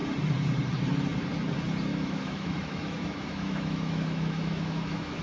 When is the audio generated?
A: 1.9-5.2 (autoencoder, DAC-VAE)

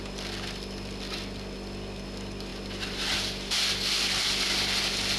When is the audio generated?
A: none

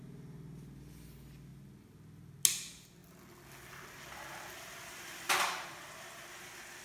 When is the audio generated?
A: none

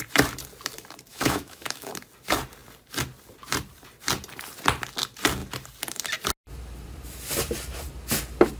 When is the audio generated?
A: 1.1-1.9 (autoencoder, DAC-VAE)

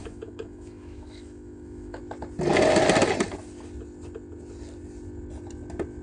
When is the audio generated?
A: 0.0-2.0 (autoencoder, DAC-VAE)

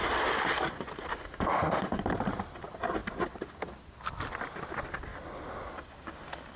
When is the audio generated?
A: 1.1-2.0 (autoencoder, DAC-VAE)

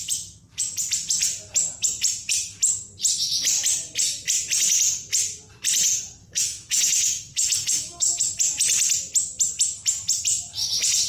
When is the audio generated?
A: 6.2-8.4 (autoencoder, DAC-VAE)

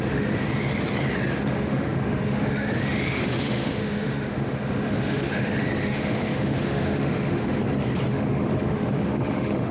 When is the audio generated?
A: 0.0-0.6 (autoencoder, DAC-VAE); 1.5-7.6; 8.1-9.7